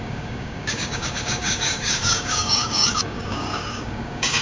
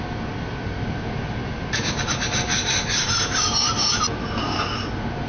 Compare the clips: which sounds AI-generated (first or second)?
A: first